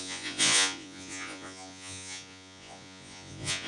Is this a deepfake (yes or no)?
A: yes